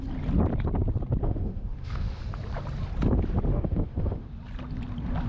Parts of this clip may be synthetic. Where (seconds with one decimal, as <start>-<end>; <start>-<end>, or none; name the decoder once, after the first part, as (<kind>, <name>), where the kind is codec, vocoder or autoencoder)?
1.2-2.2 (autoencoder, DAC-VAE); 3.5-4.3